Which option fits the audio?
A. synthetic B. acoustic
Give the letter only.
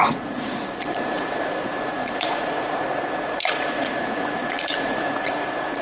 A